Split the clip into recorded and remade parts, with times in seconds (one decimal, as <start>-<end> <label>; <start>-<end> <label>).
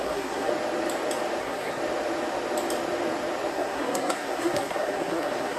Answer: 0.0-0.5 remade; 0.5-1.4 recorded; 1.4-1.8 remade; 1.8-3.5 recorded; 3.5-5.6 remade